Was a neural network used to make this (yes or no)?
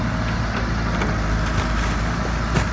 no